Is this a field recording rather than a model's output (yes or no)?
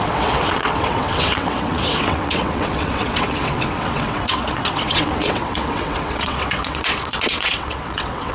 no